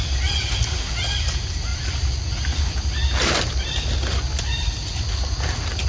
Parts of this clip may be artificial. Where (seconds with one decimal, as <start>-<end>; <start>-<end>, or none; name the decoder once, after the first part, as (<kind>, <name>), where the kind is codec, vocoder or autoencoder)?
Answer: none